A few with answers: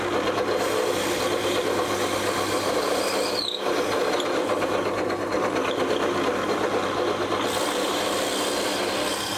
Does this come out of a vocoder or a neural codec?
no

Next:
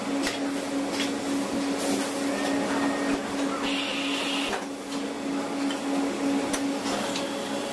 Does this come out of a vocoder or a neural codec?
no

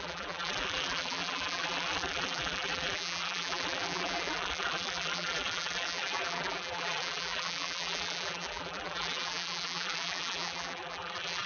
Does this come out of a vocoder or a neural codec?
yes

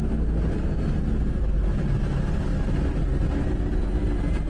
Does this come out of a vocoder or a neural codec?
no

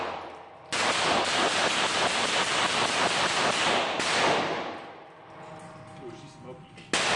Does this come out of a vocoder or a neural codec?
no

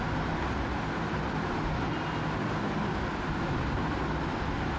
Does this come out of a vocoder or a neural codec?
no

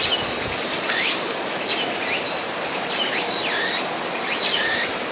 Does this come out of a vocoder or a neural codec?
no